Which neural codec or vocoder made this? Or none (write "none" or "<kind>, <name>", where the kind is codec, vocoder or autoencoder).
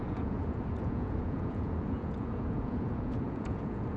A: vocoder, Vocos